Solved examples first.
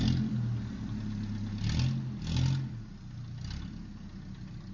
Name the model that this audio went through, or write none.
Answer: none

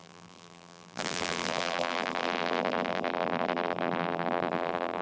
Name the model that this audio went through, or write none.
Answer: vocoder, BigVGAN v2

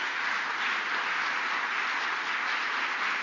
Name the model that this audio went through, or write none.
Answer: none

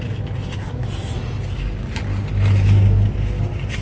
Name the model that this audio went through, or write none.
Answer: none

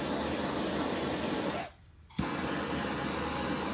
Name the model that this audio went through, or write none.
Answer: none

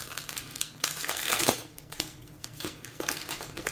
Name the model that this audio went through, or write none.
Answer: codec, SNAC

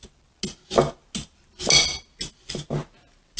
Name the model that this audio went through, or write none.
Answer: none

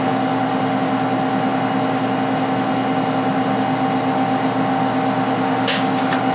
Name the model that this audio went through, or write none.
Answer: none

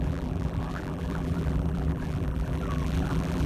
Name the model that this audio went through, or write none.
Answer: vocoder, BigVGAN v2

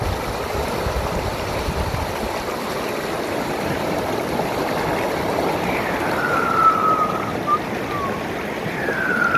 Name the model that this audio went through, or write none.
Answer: none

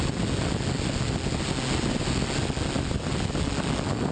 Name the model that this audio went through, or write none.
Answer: none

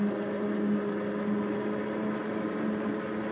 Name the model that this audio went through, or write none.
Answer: none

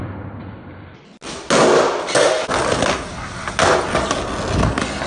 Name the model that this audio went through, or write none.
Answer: none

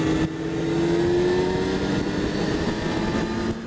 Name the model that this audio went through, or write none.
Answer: none